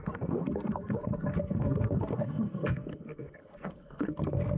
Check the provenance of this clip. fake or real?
fake